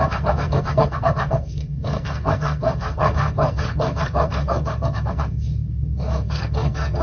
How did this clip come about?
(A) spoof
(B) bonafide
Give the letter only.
A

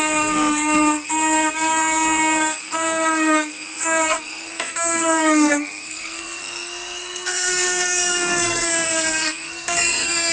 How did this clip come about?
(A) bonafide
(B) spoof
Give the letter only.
B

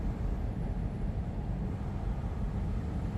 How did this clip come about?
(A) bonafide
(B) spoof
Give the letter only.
A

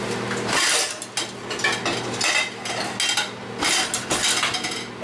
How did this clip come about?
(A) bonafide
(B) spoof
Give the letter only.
A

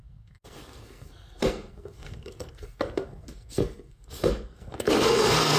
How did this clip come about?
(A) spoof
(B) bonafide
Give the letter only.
A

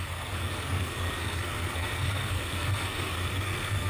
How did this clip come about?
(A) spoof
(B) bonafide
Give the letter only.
A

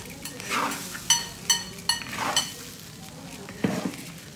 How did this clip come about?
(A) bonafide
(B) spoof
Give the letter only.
A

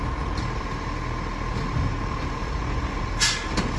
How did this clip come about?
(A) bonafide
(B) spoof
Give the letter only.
A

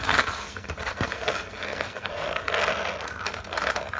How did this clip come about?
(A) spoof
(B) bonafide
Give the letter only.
A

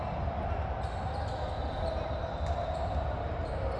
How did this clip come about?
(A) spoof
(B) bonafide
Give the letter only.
B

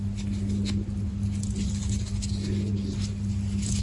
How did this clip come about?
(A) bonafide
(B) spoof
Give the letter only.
A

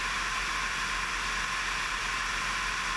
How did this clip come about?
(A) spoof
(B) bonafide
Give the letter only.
B